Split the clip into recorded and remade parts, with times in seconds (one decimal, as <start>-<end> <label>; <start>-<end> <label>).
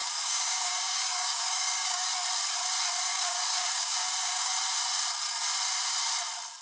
0.0-2.1 remade; 2.1-3.1 recorded; 3.1-4.5 remade; 4.5-6.6 recorded